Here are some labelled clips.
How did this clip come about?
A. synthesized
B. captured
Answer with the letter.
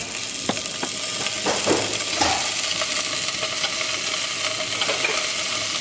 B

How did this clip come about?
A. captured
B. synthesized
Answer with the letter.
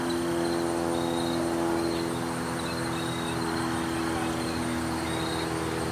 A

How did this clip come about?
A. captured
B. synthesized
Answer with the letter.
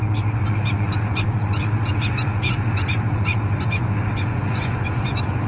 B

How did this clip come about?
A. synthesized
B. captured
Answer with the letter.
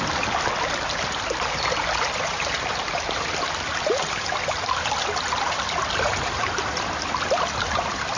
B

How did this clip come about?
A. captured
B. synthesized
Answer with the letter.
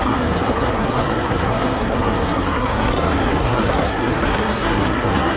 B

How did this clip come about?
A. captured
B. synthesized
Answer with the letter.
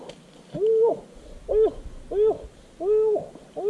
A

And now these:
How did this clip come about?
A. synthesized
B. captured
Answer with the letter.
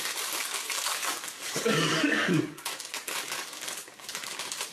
A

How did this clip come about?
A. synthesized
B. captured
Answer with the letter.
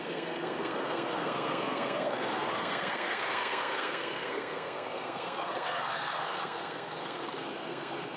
A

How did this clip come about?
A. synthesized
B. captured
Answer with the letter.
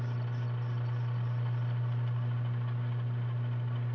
B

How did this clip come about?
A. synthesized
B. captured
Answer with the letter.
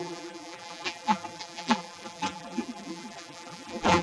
A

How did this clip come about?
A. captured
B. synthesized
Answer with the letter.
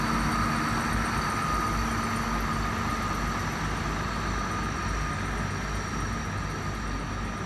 A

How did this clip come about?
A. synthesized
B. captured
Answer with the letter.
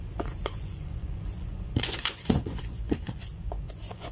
A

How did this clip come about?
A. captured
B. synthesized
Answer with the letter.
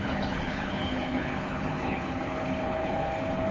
B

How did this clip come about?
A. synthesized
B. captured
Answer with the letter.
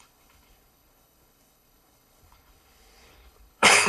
A